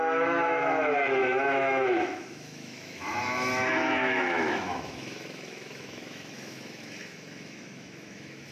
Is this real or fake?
fake